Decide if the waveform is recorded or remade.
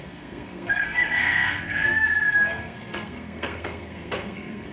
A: remade